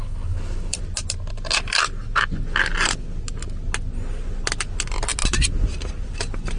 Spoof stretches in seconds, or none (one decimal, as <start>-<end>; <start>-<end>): 0.0-0.8